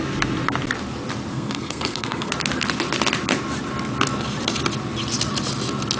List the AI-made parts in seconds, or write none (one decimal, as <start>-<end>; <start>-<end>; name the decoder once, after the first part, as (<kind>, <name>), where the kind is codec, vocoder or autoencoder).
1.3-2.3 (codec, SNAC)